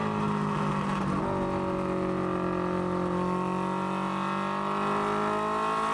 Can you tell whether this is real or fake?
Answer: real